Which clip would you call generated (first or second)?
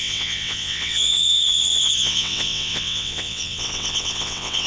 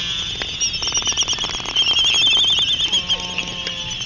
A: first